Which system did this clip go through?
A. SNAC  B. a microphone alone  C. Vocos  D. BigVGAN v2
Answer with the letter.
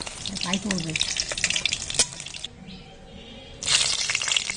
B